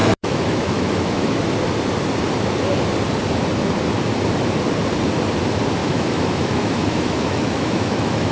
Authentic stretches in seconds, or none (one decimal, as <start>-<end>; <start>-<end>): 1.4-5.8